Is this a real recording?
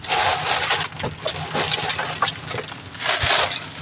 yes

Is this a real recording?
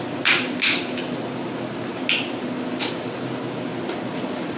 yes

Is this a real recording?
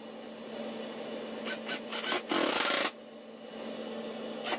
yes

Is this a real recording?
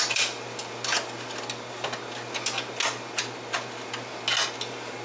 yes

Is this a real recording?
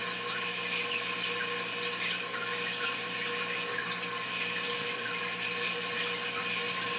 yes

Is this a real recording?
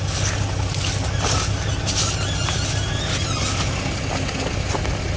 yes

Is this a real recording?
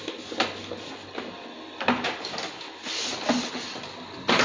yes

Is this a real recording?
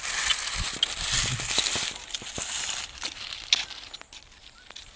yes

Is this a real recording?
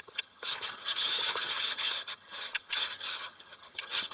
no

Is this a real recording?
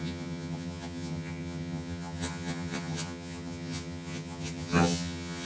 no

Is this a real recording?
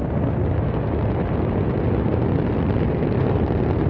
yes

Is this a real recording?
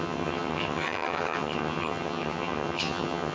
no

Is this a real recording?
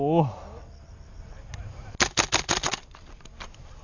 yes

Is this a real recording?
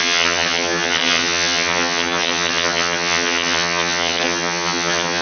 no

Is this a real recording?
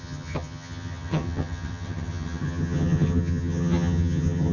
no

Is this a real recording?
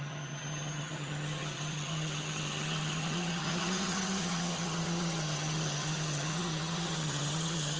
no